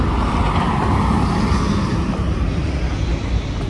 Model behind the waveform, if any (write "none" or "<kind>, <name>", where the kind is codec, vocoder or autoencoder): none